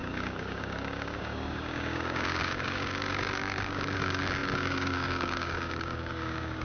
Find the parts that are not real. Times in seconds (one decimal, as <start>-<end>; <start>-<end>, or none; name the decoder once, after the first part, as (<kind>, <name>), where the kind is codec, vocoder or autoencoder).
0.0-6.6 (codec, DAC)